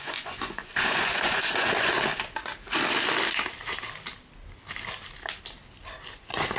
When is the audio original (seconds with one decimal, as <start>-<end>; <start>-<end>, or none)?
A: 2.1-6.1